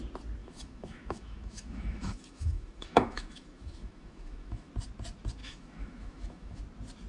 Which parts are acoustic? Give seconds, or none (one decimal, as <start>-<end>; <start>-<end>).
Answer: 0.0-0.4; 4.7-5.4; 6.6-7.1